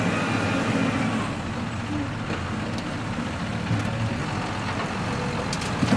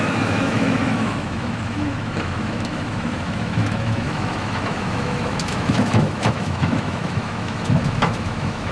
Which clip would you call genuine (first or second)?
first